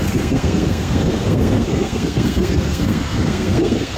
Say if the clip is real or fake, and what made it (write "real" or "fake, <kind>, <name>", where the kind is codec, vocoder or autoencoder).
fake, codec, SNAC